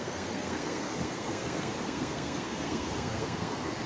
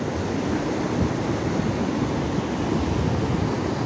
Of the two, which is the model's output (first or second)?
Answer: first